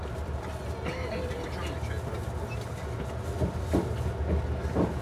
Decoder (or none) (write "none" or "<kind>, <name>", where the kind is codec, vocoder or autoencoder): none